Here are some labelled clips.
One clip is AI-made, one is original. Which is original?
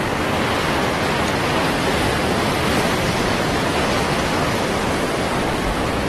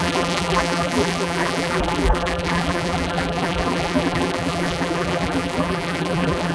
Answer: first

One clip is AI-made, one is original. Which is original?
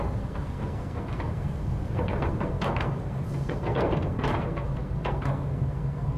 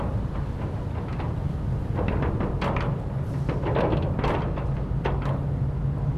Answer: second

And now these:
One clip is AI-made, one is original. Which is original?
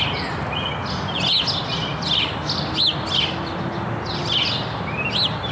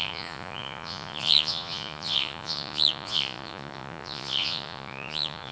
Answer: first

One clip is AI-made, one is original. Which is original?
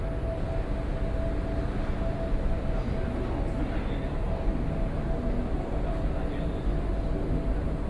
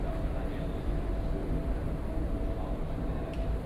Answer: first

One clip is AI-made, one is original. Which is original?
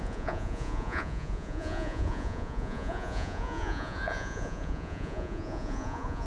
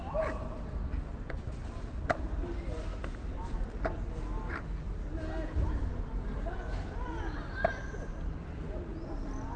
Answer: second